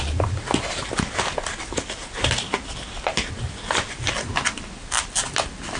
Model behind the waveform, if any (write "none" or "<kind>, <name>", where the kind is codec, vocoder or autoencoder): none